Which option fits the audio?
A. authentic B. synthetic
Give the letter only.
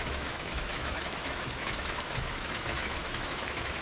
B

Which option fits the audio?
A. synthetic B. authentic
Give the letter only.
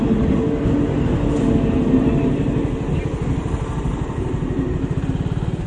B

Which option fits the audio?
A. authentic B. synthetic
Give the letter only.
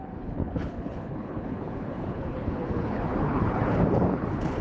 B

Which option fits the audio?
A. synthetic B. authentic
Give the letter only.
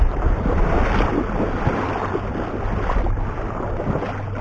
B